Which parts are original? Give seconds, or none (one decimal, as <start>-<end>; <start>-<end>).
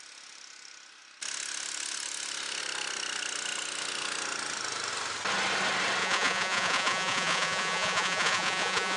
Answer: 0.0-6.0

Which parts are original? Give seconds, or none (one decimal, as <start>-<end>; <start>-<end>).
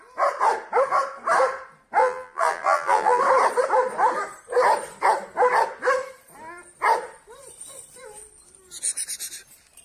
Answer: 0.0-2.0; 3.2-9.8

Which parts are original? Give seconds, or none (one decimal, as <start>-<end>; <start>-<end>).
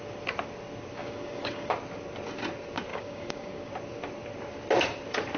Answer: 0.0-1.0; 1.7-2.9; 3.7-5.4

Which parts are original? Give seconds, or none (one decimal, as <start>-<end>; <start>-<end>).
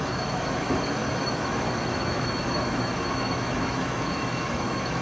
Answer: none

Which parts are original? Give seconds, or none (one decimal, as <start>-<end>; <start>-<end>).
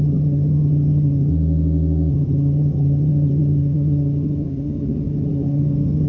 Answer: 1.3-2.1